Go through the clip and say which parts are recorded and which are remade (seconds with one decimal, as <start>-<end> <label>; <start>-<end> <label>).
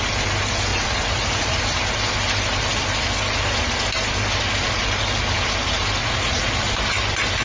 0.0-0.7 recorded; 0.7-1.6 remade; 1.6-6.0 recorded; 6.0-6.5 remade; 6.5-7.4 recorded